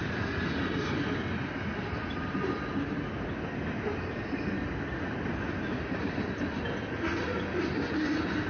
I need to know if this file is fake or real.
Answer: real